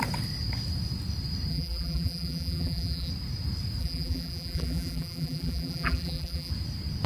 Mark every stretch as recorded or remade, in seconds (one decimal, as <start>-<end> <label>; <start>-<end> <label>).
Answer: 0.0-1.5 recorded; 1.5-3.1 remade; 3.1-3.8 recorded; 3.8-6.5 remade; 6.5-7.1 recorded